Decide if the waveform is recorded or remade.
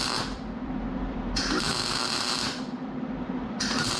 remade